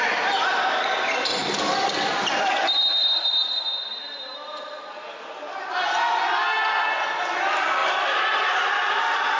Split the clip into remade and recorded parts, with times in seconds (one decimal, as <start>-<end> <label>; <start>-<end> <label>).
0.0-9.4 recorded

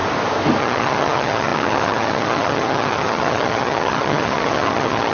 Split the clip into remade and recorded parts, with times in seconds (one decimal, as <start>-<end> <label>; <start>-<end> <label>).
0.0-0.6 recorded; 0.6-5.1 remade

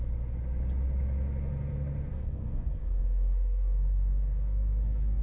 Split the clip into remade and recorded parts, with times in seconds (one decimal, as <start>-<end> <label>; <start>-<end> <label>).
0.0-2.1 recorded; 2.1-5.2 remade

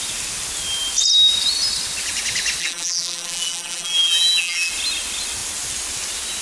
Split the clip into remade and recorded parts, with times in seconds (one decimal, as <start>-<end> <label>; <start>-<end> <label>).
0.0-2.6 recorded; 2.6-4.7 remade; 4.7-6.4 recorded

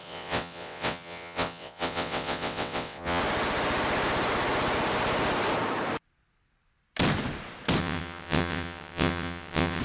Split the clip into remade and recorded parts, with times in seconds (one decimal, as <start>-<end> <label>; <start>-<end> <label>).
0.0-3.2 remade; 3.2-7.8 recorded; 7.8-9.8 remade

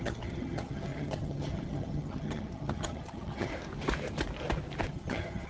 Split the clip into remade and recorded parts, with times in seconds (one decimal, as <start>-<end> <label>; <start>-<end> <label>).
0.0-3.5 remade; 3.5-4.9 recorded; 4.9-5.5 remade